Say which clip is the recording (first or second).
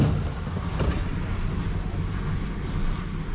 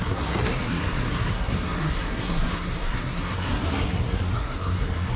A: first